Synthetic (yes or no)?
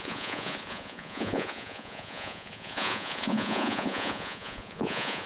yes